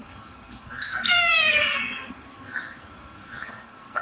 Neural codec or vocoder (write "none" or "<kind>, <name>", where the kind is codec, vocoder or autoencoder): codec, SNAC